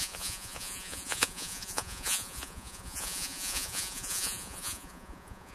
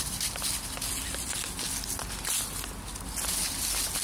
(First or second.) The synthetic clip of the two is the first